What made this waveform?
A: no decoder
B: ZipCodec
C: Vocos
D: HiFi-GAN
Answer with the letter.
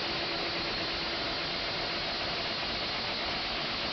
A